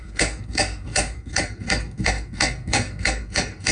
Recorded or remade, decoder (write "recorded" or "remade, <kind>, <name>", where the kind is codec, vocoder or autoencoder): remade, codec, SNAC